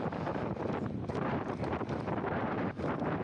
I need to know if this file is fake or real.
real